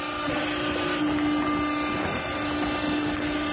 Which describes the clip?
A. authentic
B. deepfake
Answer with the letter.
A